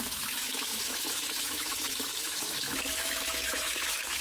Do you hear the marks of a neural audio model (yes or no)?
yes